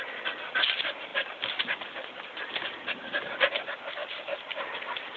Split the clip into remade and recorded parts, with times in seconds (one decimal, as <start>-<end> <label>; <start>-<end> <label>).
0.0-5.2 recorded